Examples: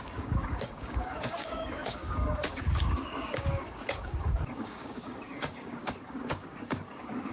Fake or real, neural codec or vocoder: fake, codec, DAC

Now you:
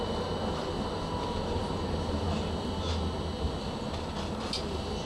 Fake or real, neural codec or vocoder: real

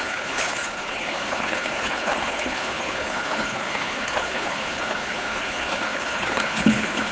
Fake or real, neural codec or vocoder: fake, codec, HILCodec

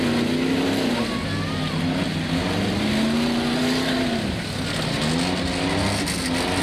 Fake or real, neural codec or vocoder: real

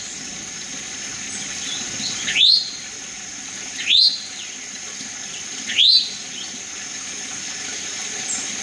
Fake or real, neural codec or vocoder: real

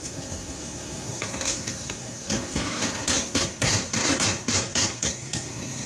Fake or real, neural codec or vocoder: fake, codec, SNAC